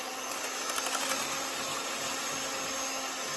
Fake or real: real